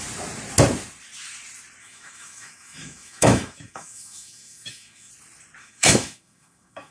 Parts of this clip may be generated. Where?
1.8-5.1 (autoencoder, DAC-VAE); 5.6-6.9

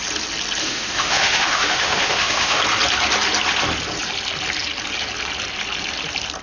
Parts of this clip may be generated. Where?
0.6-2.6 (autoencoder, DAC-VAE)

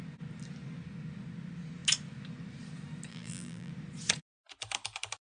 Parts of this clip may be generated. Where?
3.1-3.7 (vocoder, BigVGAN v2)

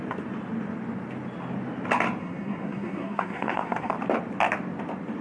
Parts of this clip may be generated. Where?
2.2-3.9 (codec, SNAC)